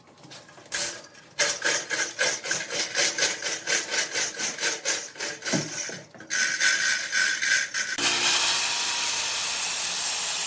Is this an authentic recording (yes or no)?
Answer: yes